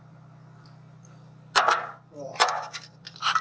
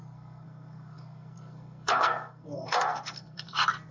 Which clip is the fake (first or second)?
second